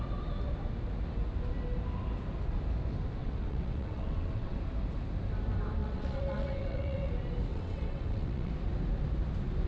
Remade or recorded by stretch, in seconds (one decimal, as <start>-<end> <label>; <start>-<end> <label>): 0.0-3.2 recorded; 3.2-4.6 remade; 4.6-5.8 recorded; 5.8-7.1 remade; 7.1-7.5 recorded; 7.5-8.5 remade; 8.5-9.7 recorded